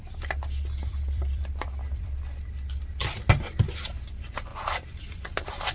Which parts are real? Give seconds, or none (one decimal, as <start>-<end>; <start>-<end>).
0.0-0.9; 2.8-4.5; 5.2-5.7